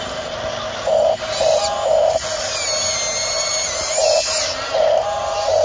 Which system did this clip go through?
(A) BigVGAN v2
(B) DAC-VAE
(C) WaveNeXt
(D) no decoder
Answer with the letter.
D